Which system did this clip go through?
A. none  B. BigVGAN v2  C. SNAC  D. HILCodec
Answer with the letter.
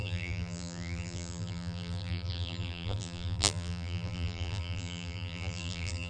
B